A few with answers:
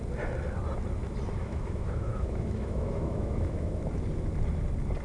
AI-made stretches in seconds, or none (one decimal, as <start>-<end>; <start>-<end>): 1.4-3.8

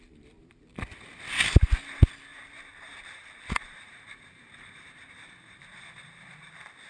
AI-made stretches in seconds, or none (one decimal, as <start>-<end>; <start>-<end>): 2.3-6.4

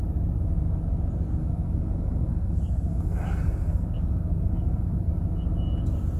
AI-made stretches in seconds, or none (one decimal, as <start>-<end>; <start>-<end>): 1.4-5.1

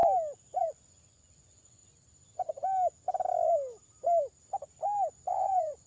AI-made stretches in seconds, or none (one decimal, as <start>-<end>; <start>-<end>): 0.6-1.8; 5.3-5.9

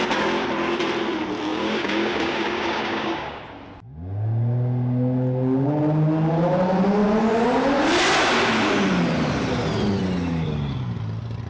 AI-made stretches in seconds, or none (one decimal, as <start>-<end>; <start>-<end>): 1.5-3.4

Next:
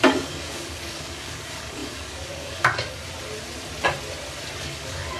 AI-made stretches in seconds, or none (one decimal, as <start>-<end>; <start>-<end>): 0.0-3.0; 4.6-5.2